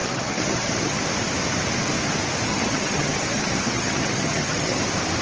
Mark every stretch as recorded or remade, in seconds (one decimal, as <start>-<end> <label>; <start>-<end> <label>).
0.0-1.0 remade; 1.0-2.5 recorded; 2.5-4.8 remade; 4.8-5.2 recorded